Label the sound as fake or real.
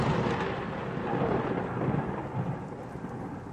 real